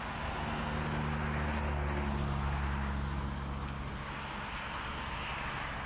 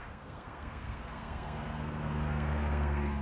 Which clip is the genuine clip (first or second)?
first